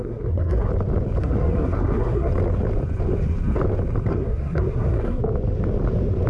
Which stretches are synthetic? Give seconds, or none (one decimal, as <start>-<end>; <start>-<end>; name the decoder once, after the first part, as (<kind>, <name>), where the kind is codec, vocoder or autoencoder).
0.0-0.7 (codec, SNAC); 1.2-2.3; 4.1-5.2